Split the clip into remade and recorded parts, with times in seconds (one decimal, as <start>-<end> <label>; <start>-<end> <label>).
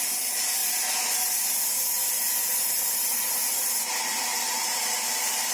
0.0-4.3 recorded; 4.3-5.5 remade